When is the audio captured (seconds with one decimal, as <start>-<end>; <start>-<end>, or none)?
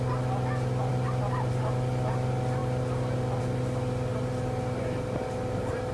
0.0-5.9